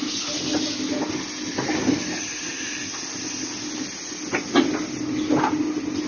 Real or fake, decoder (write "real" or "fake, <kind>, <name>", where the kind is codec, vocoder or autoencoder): real